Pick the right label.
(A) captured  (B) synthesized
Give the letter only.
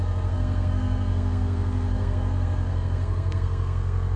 B